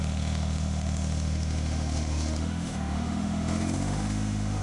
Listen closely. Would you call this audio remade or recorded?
remade